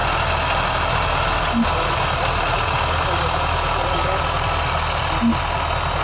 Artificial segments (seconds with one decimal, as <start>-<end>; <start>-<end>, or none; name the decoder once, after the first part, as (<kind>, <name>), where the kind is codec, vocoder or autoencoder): none